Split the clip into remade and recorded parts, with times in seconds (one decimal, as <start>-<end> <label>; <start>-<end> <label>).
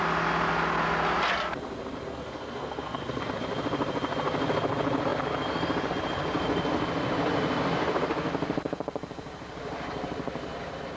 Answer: 0.0-2.1 recorded; 2.1-3.2 remade; 3.2-11.0 recorded